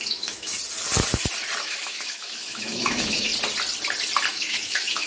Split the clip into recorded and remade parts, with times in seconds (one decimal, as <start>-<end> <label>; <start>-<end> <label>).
0.0-0.5 remade; 0.5-1.6 recorded; 1.6-3.3 remade; 3.3-4.3 recorded; 4.3-5.1 remade

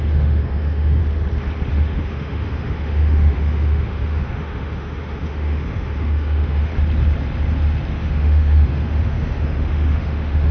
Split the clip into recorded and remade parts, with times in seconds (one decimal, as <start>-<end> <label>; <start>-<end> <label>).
0.0-1.0 remade; 1.0-1.7 recorded; 1.7-6.7 remade; 6.7-7.9 recorded; 7.9-10.5 remade